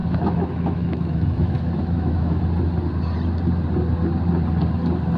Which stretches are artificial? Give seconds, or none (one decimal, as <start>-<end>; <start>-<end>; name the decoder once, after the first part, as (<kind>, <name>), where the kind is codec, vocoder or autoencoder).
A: 0.0-2.4 (autoencoder, DAC-VAE)